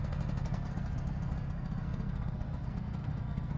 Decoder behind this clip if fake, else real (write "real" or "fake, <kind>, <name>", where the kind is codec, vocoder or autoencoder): fake, codec, SNAC